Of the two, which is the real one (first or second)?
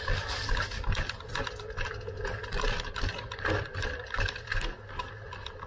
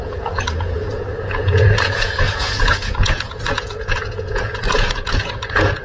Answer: first